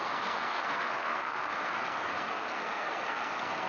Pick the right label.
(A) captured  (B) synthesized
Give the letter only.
B